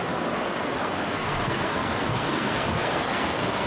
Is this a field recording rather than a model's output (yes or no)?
no